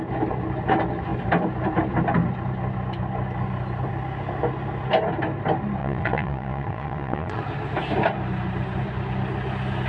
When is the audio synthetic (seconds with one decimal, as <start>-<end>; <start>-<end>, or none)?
5.8-7.4